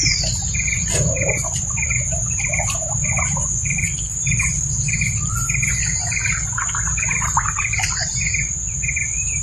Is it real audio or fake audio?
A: fake